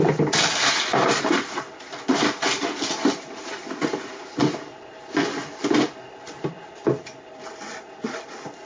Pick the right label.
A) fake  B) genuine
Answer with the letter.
A